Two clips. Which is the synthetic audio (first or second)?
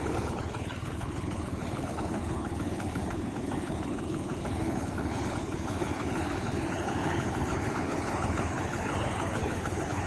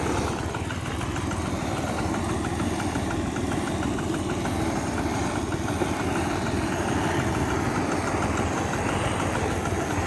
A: first